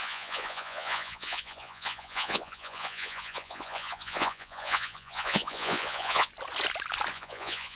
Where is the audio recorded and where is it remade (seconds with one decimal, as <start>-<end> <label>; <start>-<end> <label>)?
0.0-6.3 remade; 6.3-7.1 recorded; 7.1-7.8 remade